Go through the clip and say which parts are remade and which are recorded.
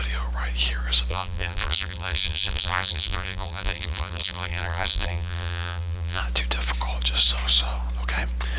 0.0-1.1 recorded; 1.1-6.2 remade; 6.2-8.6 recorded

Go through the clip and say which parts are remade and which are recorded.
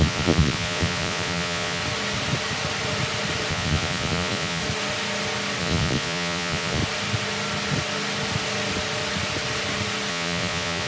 0.0-1.8 remade; 1.8-3.5 recorded; 3.5-4.6 remade; 4.6-5.6 recorded; 5.6-6.8 remade; 6.8-10.1 recorded; 10.1-10.9 remade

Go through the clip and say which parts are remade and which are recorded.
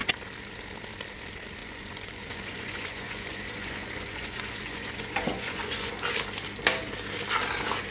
0.0-1.6 recorded; 1.6-5.9 remade; 5.9-7.9 recorded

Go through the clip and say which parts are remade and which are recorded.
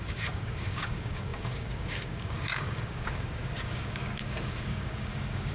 0.0-5.5 remade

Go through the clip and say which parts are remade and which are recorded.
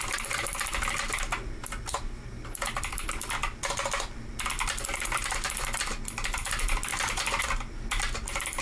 0.0-8.6 recorded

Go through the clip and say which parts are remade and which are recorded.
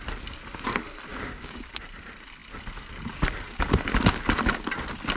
0.0-1.1 recorded; 1.1-1.6 remade; 1.6-5.2 recorded